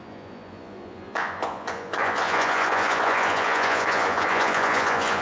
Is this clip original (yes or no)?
no